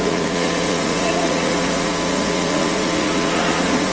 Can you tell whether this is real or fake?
fake